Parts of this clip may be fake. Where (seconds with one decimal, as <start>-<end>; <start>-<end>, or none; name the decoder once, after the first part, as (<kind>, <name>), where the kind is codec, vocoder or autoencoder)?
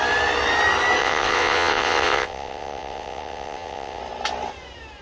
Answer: 1.0-4.0 (vocoder, WaveNeXt)